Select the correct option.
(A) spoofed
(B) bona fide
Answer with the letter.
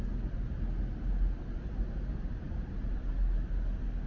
B